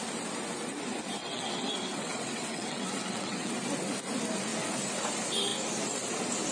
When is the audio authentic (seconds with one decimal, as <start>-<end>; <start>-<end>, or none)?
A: 0.0-1.2; 3.5-6.5